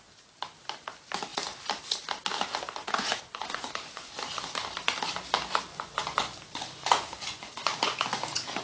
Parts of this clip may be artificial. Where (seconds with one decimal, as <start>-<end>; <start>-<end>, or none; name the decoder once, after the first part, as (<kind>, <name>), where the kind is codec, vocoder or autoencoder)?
2.8-4.1 (vocoder, Vocos); 5.7-8.0